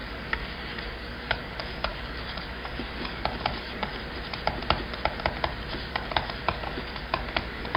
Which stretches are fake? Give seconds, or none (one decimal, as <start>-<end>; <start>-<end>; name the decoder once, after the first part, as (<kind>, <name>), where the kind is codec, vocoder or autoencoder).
0.0-3.9 (codec, DAC); 5.9-7.8